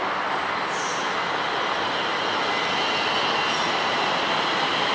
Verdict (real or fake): real